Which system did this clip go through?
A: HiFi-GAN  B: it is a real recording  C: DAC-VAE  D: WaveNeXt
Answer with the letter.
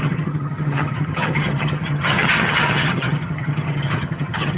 A